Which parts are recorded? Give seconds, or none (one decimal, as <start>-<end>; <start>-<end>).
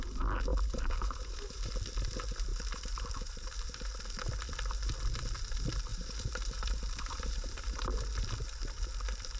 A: 0.0-0.5; 1.7-2.5; 4.0-5.9; 7.9-9.4